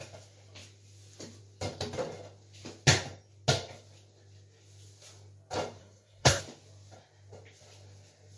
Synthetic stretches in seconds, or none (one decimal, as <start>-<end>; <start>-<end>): 5.8-6.4